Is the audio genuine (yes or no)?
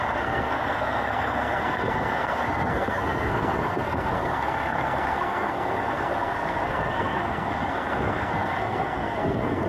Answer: no